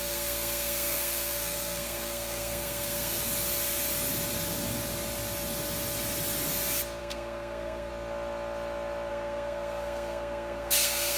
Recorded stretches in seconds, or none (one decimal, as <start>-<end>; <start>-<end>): 3.3-7.0; 7.9-9.1